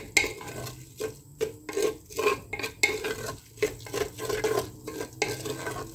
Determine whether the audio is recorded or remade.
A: recorded